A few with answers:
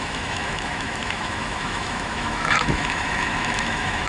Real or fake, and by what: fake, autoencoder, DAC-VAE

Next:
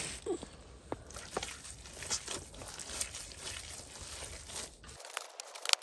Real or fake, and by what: real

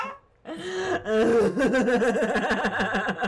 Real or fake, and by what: real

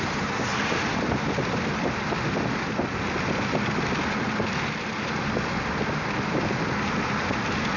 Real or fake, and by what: real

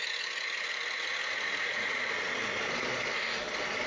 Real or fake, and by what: real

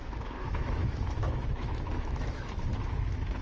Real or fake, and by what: fake, autoencoder, DAC-VAE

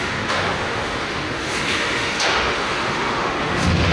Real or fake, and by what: fake, autoencoder, DAC-VAE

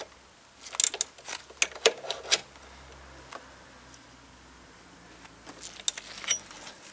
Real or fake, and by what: real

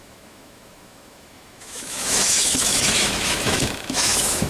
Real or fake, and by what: fake, autoencoder, DAC-VAE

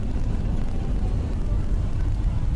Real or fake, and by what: real